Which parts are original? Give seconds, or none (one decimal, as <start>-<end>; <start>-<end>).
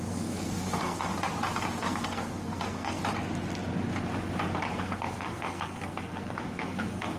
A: 1.1-1.8; 3.0-4.7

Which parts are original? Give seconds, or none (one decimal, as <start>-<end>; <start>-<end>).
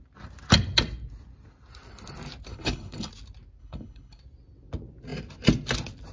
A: 0.0-2.5; 3.1-3.6; 4.2-6.1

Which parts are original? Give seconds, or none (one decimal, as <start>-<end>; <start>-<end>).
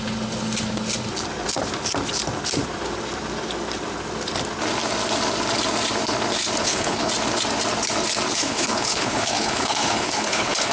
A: 0.0-6.6; 7.1-8.4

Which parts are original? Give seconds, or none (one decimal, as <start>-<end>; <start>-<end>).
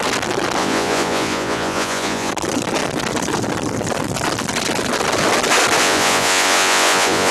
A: 0.0-0.6; 2.3-5.8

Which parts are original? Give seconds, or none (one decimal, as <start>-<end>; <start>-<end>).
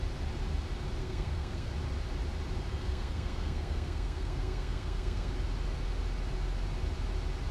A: 0.0-1.0; 1.7-2.8; 5.3-7.5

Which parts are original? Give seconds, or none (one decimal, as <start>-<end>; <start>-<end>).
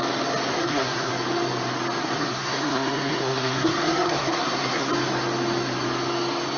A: 0.0-0.5; 1.1-2.0; 4.9-6.6